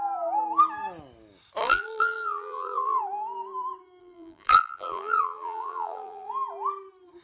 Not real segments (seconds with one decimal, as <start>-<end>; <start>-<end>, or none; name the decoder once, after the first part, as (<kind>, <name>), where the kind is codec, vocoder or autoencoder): 1.6-3.0 (vocoder, BigVGAN v2); 4.0-6.3